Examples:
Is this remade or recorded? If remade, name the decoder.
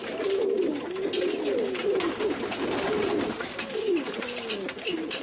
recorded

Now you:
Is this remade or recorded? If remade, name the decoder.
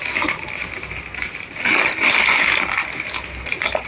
recorded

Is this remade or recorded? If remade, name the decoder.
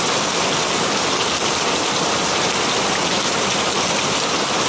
remade, vocoder, BigVGAN v2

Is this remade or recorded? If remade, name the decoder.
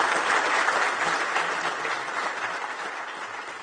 recorded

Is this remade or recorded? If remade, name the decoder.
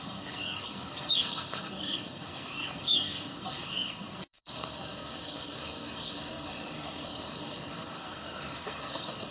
remade, codec, SNAC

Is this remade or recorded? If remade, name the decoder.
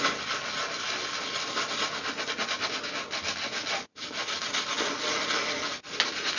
recorded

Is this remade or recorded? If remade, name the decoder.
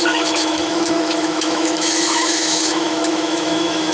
remade, autoencoder, DAC-VAE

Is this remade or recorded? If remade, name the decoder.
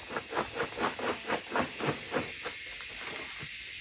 recorded